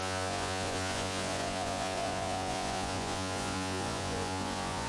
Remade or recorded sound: remade